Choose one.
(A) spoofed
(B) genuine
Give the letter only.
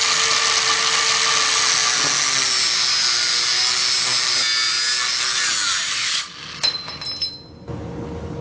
B